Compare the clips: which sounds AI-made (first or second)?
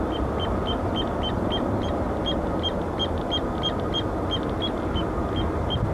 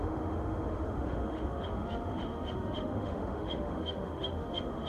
second